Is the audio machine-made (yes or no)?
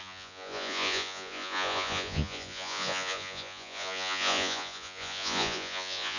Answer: yes